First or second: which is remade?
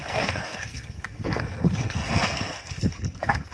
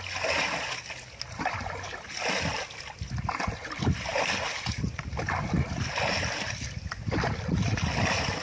first